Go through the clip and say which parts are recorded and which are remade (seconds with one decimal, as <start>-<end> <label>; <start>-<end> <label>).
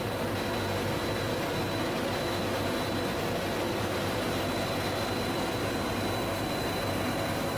0.0-1.6 recorded; 1.6-2.4 remade; 2.4-7.6 recorded